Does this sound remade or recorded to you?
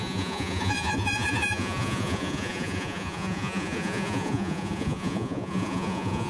remade